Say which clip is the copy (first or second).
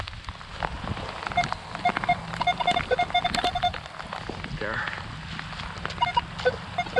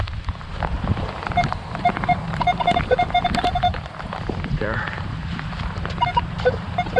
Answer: second